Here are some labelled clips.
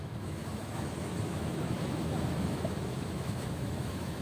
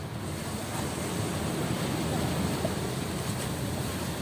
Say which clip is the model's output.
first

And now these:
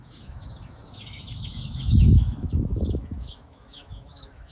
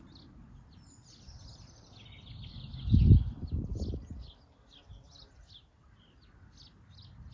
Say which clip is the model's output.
first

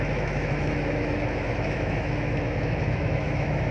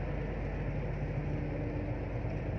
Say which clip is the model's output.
first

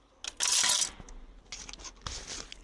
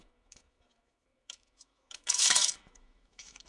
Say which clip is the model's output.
second